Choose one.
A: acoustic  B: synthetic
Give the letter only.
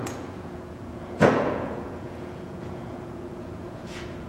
B